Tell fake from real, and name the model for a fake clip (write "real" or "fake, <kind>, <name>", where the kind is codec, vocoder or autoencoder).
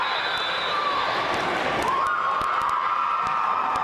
real